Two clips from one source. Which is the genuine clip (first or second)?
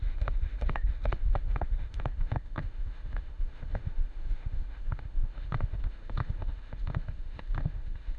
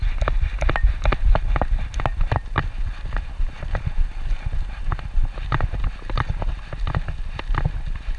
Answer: second